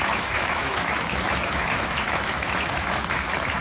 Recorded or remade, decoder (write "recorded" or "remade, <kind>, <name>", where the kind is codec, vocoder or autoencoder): remade, autoencoder, DAC-VAE